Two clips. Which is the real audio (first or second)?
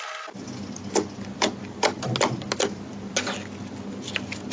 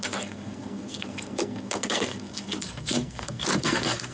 first